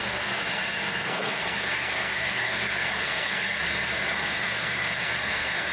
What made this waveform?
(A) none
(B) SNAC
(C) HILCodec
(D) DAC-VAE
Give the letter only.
B